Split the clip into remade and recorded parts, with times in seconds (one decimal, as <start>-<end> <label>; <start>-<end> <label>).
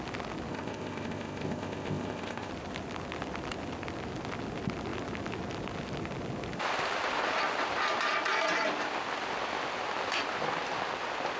0.0-0.5 recorded; 0.5-2.5 remade; 2.5-11.4 recorded